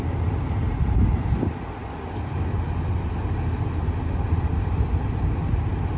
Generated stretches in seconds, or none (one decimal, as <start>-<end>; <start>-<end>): none